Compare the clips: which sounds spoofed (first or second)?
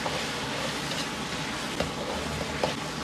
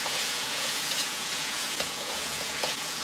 second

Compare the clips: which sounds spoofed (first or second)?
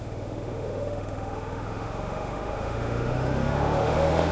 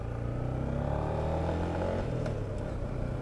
first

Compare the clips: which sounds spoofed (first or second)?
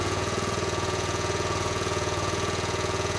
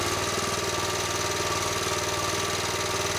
first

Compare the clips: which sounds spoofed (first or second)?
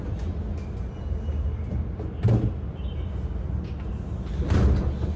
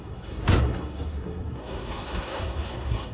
second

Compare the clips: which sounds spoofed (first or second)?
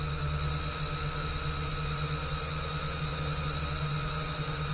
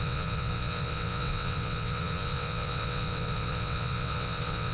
second